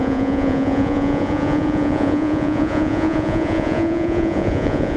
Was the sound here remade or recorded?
remade